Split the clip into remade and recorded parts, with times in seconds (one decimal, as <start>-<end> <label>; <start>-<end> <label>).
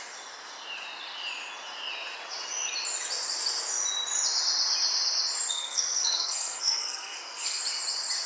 0.0-5.5 recorded; 5.5-7.6 remade; 7.6-8.3 recorded